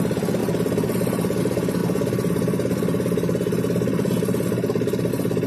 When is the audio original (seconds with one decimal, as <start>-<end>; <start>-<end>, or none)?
0.0-0.4; 1.4-5.5